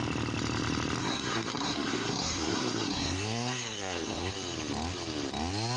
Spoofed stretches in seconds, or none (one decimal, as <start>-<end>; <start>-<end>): 1.0-4.3